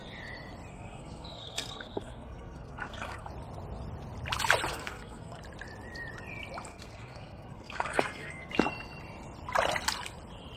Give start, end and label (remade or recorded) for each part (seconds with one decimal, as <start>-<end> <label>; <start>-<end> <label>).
0.0-0.7 recorded; 0.7-3.3 remade; 3.3-4.7 recorded; 4.7-5.4 remade; 5.4-6.7 recorded; 6.7-8.5 remade; 8.5-10.6 recorded